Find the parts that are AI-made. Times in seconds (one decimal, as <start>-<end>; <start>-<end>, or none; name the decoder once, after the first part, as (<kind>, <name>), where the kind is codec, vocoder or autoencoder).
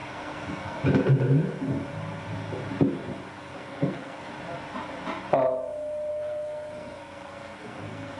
0.0-0.8 (codec, SNAC); 3.3-4.3; 6.1-8.2